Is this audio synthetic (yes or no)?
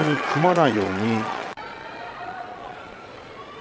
yes